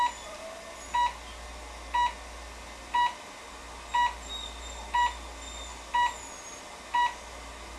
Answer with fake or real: real